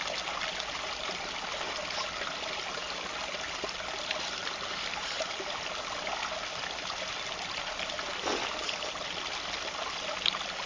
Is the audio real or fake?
real